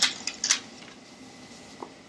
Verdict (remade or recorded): recorded